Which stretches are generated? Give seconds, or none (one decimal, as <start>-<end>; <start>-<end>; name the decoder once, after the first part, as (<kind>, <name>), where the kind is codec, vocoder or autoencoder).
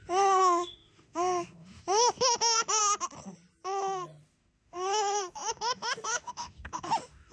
0.0-2.8 (autoencoder, DAC-VAE); 4.2-7.3